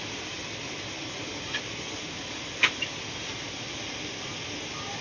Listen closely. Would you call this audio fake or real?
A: real